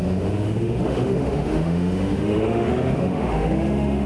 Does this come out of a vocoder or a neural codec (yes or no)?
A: yes